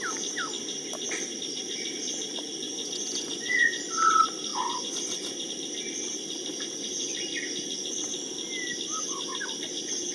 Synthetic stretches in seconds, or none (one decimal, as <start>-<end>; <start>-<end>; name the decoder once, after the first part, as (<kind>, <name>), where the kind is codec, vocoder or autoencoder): 2.6-3.8 (vocoder, Vocos); 4.5-5.5